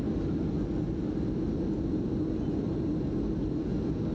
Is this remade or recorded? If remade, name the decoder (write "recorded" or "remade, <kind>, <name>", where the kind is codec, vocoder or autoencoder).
recorded